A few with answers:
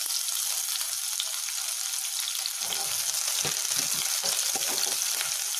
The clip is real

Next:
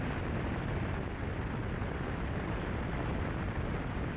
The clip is real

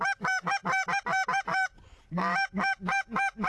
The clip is real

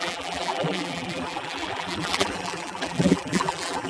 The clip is fake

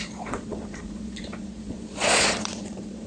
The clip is fake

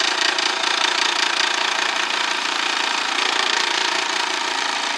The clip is fake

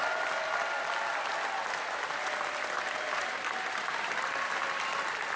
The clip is real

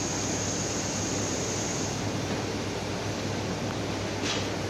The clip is real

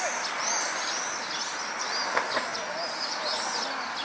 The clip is real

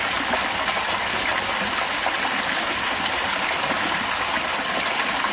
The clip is real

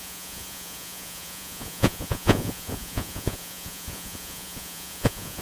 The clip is fake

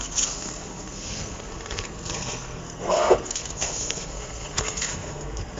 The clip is fake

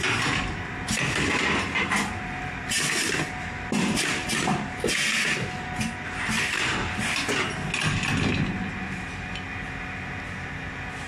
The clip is real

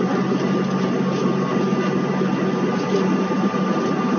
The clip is real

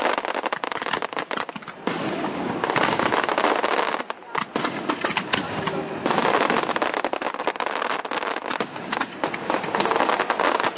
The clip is real